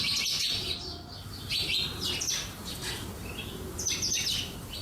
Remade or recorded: recorded